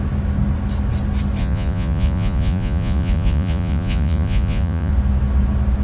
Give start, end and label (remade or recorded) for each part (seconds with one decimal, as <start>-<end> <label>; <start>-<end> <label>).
0.0-1.4 recorded; 1.4-4.9 remade; 4.9-5.8 recorded